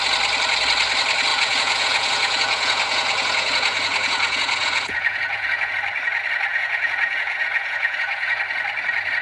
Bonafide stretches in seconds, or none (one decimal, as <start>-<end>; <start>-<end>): 0.0-1.3; 5.7-6.5; 8.4-9.2